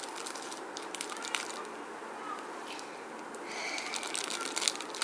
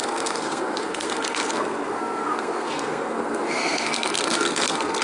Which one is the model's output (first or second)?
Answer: second